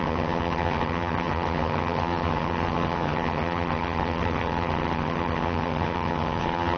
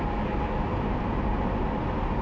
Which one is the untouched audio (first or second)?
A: second